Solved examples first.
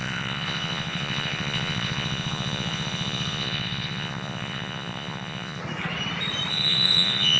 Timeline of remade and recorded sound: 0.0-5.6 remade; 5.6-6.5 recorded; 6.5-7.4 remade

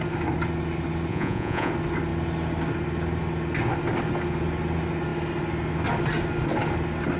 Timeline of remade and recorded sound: 0.0-1.1 recorded; 1.1-1.7 remade; 1.7-7.2 recorded

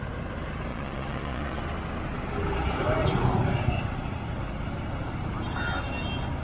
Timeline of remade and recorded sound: 0.0-0.7 recorded; 0.7-1.6 remade; 1.6-6.4 recorded

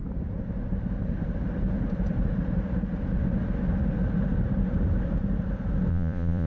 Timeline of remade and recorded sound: 0.0-5.9 recorded; 5.9-6.5 remade

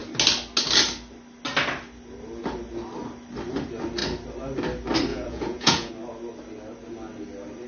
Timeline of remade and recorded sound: 0.0-5.1 recorded; 5.1-5.9 remade; 5.9-7.7 recorded

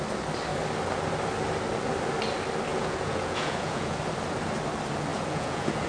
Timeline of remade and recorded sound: 0.0-2.7 recorded; 2.7-4.0 remade; 4.0-5.1 recorded; 5.1-5.9 remade

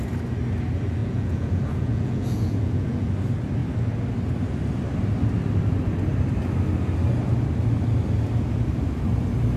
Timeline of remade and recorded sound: 0.0-1.0 recorded; 1.0-3.1 remade; 3.1-9.6 recorded